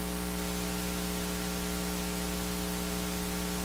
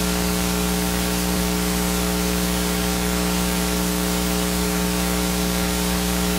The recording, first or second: first